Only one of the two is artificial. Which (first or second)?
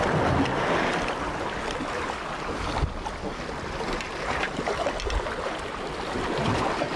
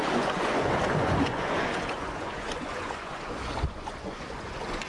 second